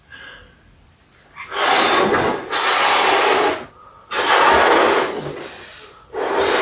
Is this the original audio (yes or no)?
yes